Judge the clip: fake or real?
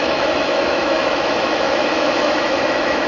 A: fake